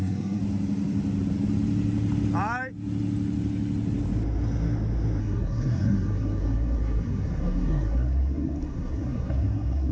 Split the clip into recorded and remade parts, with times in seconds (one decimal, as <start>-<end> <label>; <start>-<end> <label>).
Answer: 0.0-0.4 remade; 0.4-5.2 recorded; 5.2-9.9 remade